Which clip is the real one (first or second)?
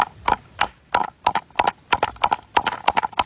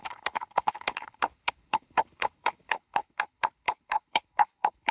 first